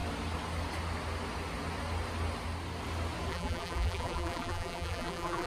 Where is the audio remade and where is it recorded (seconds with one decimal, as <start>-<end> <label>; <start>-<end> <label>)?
0.0-3.3 recorded; 3.3-5.5 remade